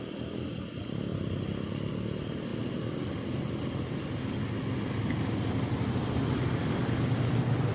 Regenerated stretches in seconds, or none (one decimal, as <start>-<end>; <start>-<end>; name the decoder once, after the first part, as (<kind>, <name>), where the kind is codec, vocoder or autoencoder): none